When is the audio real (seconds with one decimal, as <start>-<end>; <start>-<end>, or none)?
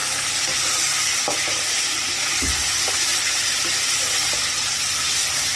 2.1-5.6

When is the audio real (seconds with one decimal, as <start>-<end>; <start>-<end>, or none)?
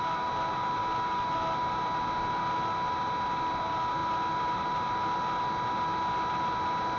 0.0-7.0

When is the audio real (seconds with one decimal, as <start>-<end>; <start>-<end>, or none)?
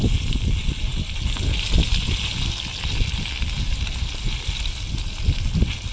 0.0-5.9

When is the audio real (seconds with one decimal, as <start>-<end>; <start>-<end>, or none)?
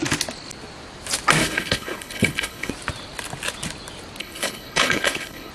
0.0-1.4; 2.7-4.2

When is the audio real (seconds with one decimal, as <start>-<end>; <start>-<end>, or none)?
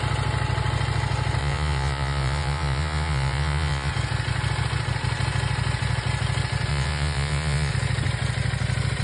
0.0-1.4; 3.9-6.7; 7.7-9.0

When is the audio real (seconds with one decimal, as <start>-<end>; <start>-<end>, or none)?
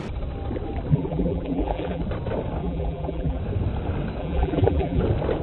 0.0-0.9; 2.0-2.6; 3.4-4.2; 5.0-5.4